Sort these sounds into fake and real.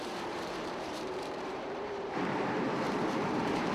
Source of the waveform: fake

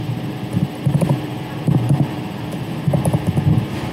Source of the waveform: real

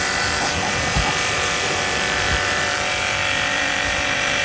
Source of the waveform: fake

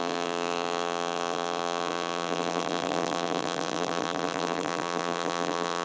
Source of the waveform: fake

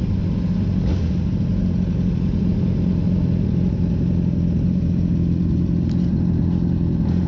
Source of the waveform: real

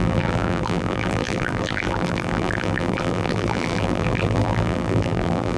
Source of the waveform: fake